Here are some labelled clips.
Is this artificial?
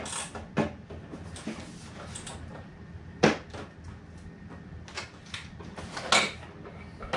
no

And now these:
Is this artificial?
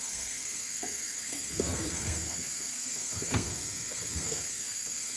yes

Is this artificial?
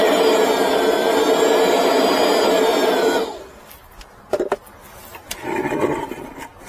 no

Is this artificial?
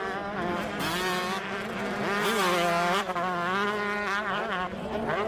no